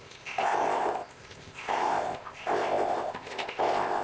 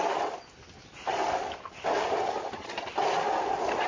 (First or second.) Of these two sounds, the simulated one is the first